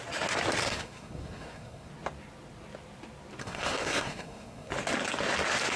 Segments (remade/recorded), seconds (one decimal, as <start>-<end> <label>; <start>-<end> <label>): 0.0-0.6 recorded; 0.6-1.9 remade; 1.9-3.4 recorded; 3.4-4.7 remade; 4.7-5.8 recorded

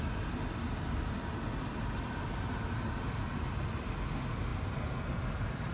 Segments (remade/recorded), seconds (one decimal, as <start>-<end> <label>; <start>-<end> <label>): 0.0-5.7 recorded

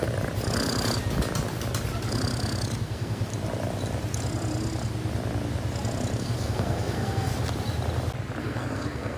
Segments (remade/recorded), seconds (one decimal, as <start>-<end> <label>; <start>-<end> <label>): 0.0-2.8 recorded; 2.8-3.3 remade; 3.3-6.2 recorded; 6.2-7.3 remade; 7.3-8.4 recorded; 8.4-9.2 remade

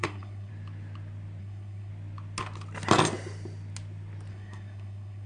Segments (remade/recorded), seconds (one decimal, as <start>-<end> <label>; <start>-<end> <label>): 0.0-0.5 remade; 0.5-1.4 recorded; 1.4-1.9 remade; 1.9-4.3 recorded; 4.3-5.3 remade

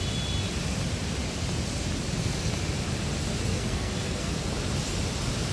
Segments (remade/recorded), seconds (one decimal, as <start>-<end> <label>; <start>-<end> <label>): 0.0-3.5 recorded; 3.5-4.3 remade; 4.3-5.5 recorded